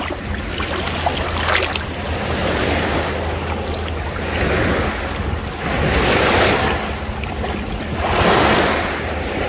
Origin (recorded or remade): recorded